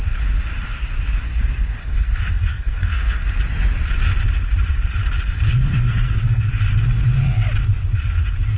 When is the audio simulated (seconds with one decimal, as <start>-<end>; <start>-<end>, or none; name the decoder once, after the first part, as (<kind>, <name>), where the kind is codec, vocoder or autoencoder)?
1.8-3.2 (codec, SNAC); 5.5-6.6